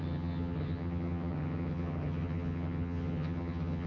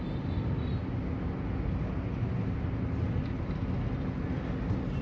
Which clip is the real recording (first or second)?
second